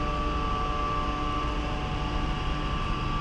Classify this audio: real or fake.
real